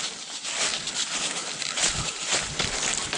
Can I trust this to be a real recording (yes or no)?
yes